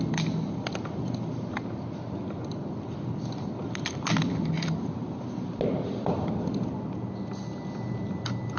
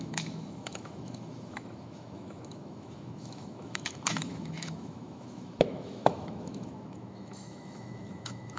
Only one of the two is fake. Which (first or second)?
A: second